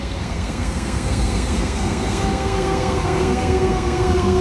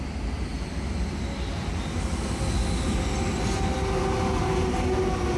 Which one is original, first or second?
second